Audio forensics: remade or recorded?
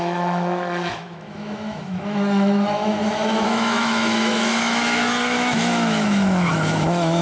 remade